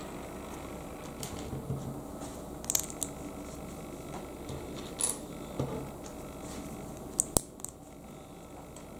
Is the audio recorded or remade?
recorded